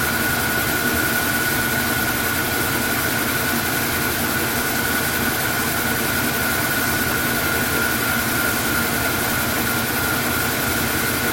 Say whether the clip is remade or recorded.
recorded